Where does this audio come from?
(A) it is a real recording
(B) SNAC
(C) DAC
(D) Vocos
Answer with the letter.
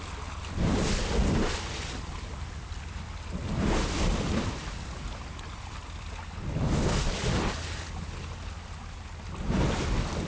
A